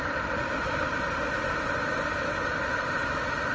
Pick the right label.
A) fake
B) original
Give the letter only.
B